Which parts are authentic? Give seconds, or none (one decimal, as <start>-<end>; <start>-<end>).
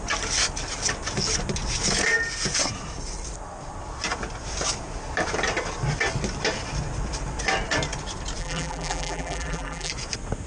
0.0-8.4; 9.9-10.5